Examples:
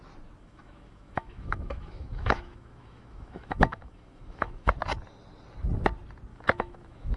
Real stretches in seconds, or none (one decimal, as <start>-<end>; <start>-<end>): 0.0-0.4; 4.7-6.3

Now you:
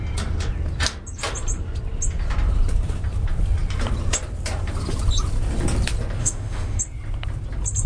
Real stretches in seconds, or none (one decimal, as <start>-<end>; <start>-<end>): 0.0-6.2; 6.8-7.9

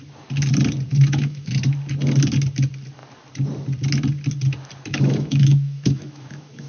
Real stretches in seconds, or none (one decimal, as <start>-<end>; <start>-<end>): 0.0-0.9; 1.5-4.9

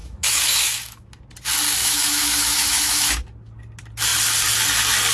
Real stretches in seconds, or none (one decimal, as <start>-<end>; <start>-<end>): 1.1-1.8; 3.1-5.1

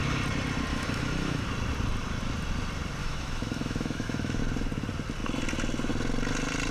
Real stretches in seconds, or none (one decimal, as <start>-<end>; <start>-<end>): 0.0-0.7; 1.5-3.0; 4.4-6.7

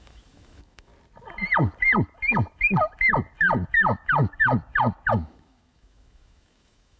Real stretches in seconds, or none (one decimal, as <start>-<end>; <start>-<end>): 0.9-5.1

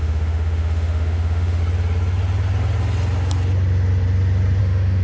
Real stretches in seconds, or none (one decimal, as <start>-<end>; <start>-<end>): 1.6-4.6